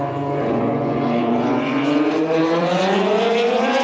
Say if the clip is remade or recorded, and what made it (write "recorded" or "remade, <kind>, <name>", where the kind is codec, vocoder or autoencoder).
remade, vocoder, Vocos